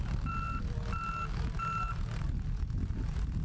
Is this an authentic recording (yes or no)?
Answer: yes